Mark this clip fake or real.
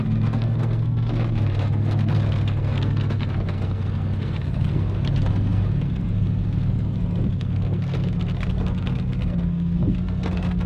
fake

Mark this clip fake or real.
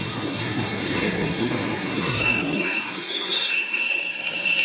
fake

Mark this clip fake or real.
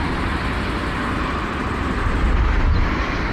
fake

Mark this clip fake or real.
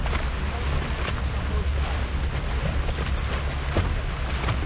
real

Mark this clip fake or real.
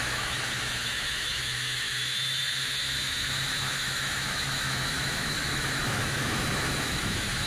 fake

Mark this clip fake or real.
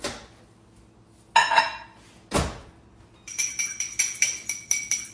real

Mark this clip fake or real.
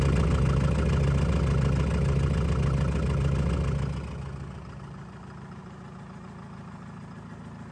real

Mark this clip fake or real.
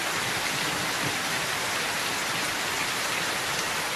fake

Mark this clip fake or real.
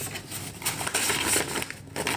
real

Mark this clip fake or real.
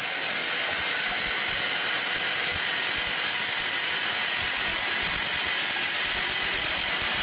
real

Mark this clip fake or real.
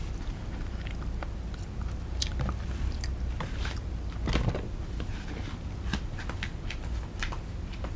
real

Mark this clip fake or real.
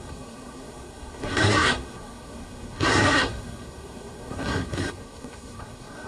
fake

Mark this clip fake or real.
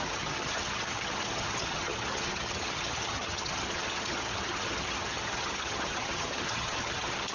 fake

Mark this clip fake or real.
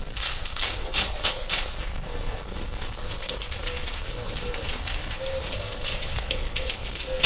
fake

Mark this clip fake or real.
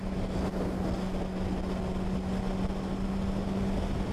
real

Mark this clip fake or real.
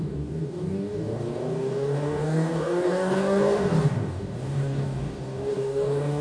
fake